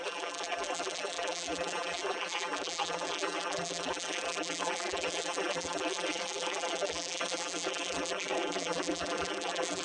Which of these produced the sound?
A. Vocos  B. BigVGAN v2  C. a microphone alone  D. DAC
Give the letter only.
B